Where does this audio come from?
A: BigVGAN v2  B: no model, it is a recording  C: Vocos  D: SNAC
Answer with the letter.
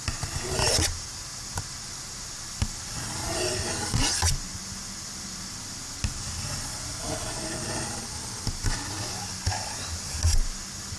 B